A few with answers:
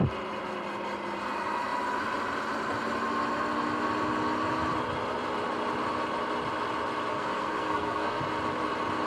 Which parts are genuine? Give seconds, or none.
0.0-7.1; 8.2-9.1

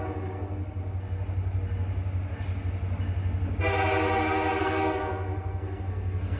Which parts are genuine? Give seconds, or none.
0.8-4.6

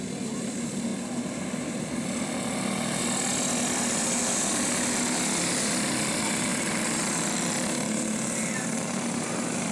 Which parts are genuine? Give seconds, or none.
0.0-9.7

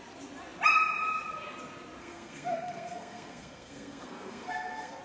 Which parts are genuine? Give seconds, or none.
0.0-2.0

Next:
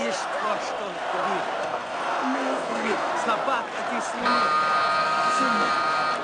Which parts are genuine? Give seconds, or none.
0.0-1.6; 3.1-5.0; 5.7-6.2

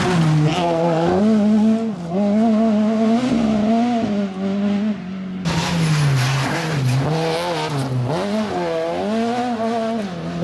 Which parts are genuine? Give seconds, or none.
0.0-0.5; 1.2-10.4